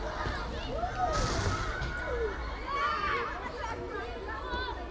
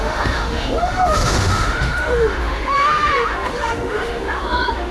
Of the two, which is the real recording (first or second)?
first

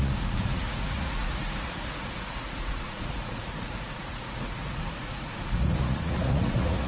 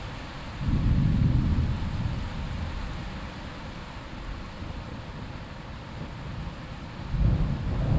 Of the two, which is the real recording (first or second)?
second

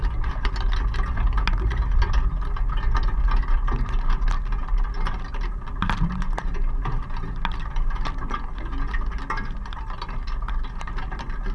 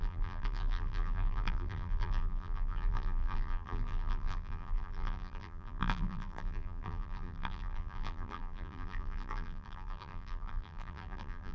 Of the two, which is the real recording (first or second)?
first